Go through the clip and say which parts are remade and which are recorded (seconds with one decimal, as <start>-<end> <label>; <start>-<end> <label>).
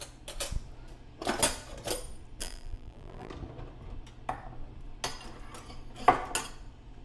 0.0-2.4 recorded; 2.4-3.3 remade; 3.3-7.0 recorded